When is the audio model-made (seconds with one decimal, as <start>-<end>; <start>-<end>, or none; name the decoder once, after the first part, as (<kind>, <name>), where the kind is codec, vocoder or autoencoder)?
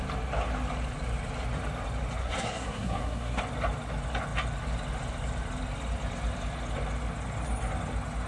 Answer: 2.2-3.4 (codec, SNAC)